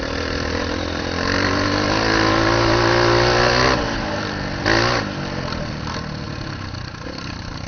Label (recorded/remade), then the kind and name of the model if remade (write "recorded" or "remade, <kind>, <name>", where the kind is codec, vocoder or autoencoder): recorded